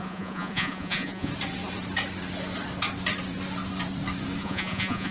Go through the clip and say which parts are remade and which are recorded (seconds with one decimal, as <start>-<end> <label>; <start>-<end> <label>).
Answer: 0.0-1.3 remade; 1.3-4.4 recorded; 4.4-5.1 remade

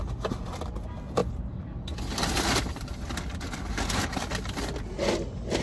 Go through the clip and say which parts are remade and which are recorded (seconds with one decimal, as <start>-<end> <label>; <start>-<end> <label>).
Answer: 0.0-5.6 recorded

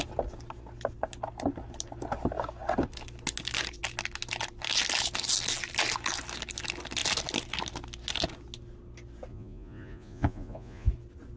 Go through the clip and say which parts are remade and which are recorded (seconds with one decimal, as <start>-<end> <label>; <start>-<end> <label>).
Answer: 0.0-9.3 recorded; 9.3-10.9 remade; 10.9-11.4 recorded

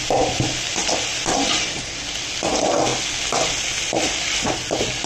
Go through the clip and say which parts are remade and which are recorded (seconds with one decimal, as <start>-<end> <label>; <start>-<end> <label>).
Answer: 0.0-5.1 recorded

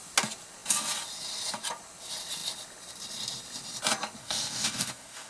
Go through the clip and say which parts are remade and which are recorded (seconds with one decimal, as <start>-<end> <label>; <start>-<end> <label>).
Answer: 0.0-4.2 recorded; 4.2-5.3 remade

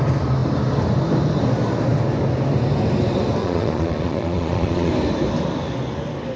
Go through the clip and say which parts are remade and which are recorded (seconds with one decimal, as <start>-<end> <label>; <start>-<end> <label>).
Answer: 0.0-3.4 recorded; 3.4-4.9 remade; 4.9-6.4 recorded

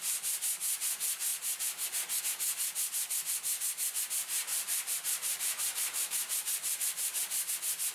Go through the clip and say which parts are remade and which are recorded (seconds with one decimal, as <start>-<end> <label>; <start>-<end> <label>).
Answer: 0.0-4.5 recorded; 4.5-7.5 remade; 7.5-7.9 recorded

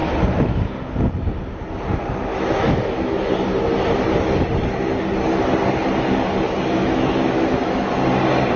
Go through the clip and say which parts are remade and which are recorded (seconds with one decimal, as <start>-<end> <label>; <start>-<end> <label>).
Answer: 0.0-2.3 recorded; 2.3-3.3 remade; 3.3-6.8 recorded; 6.8-8.0 remade; 8.0-8.6 recorded